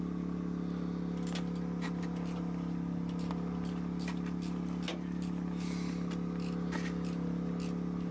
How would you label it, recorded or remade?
recorded